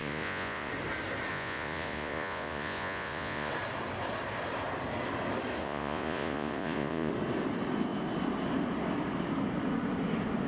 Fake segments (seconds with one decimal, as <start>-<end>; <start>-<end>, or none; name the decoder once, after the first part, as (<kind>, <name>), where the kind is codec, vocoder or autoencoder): 0.0-0.7 (vocoder, Vocos); 1.3-3.5; 5.6-7.1